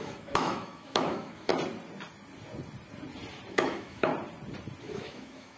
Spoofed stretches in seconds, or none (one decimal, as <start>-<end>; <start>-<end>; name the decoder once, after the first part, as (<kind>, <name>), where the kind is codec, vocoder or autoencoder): 0.0-1.5 (autoencoder, DAC-VAE); 3.5-4.1; 4.8-5.6